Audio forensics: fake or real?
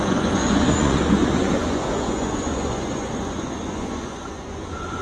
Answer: fake